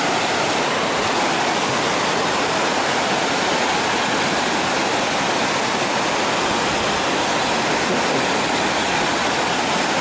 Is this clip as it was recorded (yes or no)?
yes